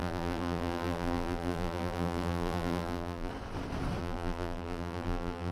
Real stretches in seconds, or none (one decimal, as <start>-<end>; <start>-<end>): 3.3-4.0